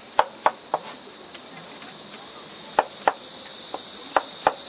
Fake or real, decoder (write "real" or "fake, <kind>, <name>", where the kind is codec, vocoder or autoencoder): real